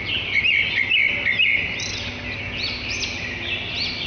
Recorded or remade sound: recorded